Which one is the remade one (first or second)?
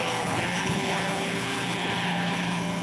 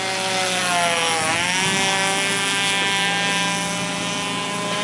first